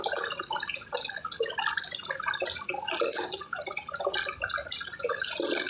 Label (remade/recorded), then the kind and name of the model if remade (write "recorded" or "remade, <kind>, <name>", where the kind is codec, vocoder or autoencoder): recorded